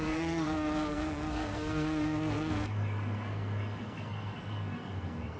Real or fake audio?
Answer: fake